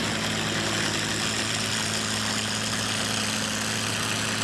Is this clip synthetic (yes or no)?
no